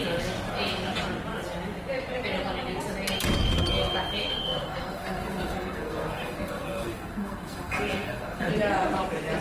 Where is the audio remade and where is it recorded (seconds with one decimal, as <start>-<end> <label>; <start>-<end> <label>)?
0.0-4.3 recorded; 4.3-8.5 remade; 8.5-9.4 recorded